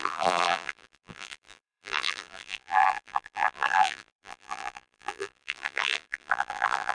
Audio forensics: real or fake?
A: fake